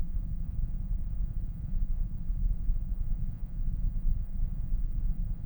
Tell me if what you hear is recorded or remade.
remade